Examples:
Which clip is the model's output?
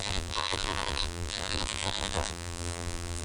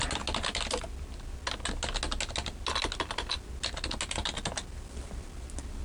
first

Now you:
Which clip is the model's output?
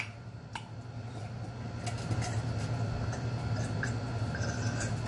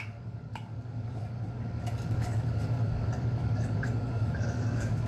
second